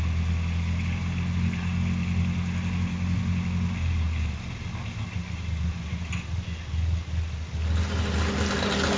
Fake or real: real